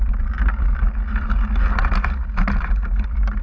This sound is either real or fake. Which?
real